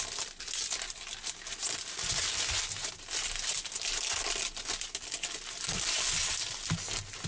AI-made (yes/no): no